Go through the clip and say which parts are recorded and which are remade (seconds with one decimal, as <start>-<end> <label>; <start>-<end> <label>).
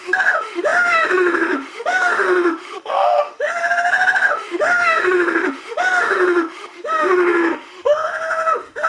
0.0-8.9 remade